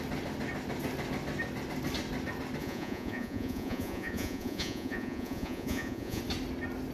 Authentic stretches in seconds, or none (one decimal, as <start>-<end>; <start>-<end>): 0.0-2.6; 6.2-6.9